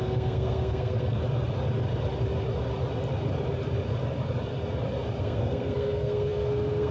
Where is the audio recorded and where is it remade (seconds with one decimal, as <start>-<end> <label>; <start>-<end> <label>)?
0.0-1.2 remade; 1.2-5.2 recorded; 5.2-6.9 remade